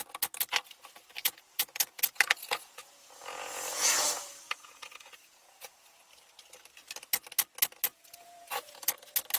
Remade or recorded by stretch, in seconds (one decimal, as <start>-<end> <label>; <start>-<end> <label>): 0.0-1.2 recorded; 1.2-6.0 remade; 6.0-7.9 recorded; 7.9-8.9 remade; 8.9-9.4 recorded